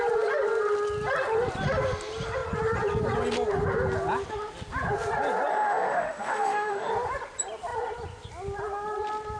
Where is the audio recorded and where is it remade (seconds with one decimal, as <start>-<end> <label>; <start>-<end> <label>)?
0.0-5.5 recorded; 5.5-6.9 remade; 6.9-9.4 recorded